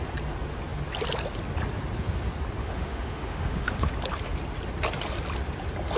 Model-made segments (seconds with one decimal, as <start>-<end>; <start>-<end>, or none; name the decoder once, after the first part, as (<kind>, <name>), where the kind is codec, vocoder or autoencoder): 2.6-3.9 (autoencoder, DAC-VAE)

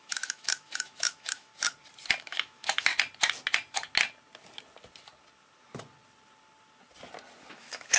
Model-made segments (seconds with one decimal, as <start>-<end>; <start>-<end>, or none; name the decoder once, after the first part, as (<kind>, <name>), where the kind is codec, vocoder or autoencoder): 0.0-1.5 (autoencoder, DAC-VAE); 2.2-2.9; 7.5-8.0

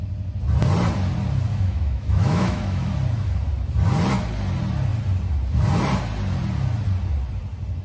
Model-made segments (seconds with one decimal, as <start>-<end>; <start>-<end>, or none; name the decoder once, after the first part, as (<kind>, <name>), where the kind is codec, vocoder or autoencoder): 1.5-2.9 (autoencoder, DAC-VAE)

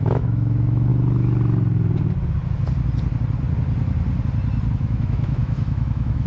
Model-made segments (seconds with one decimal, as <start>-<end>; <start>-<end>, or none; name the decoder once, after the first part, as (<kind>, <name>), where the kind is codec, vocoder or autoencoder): 0.0-0.9 (autoencoder, DAC-VAE); 4.7-6.3

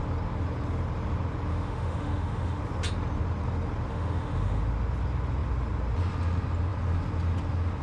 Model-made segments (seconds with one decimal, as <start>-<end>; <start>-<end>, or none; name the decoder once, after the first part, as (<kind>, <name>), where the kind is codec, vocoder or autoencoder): 1.5-2.6 (autoencoder, DAC-VAE); 3.9-4.6